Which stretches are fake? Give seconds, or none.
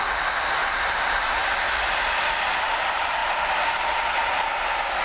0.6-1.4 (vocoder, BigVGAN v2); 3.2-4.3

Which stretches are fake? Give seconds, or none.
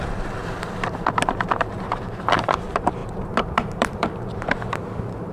0.0-0.4 (vocoder, BigVGAN v2); 1.6-5.3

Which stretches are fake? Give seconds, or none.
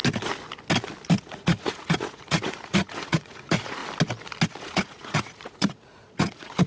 1.2-3.8 (vocoder, Vocos); 4.6-6.7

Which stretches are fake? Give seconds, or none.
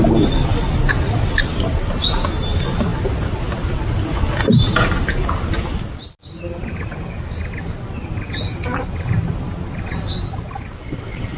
none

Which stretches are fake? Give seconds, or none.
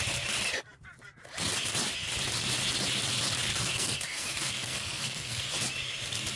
3.5-5.6 (codec, SNAC)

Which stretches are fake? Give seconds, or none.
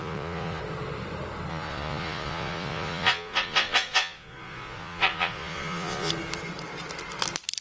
0.0-0.6 (vocoder, Vocos); 1.5-6.1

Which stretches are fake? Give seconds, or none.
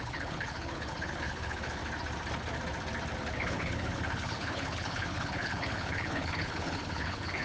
0.0-1.8 (codec, HILCodec); 3.2-7.4